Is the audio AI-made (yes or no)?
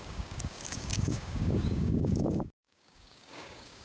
yes